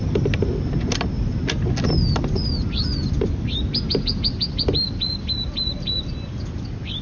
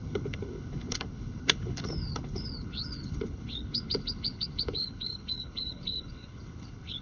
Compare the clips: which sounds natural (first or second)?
first